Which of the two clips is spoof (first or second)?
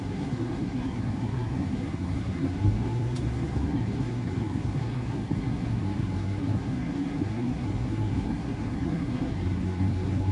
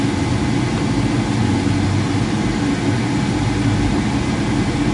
first